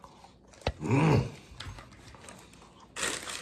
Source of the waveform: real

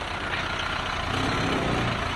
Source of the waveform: real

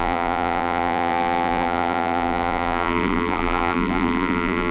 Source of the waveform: fake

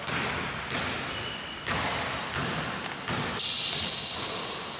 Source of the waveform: real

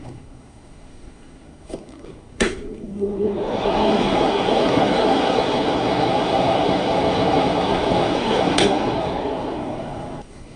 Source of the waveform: fake